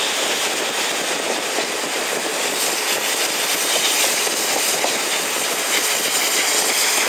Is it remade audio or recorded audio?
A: recorded